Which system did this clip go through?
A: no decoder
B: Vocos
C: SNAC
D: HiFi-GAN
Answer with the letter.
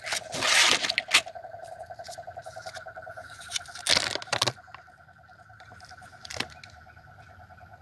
A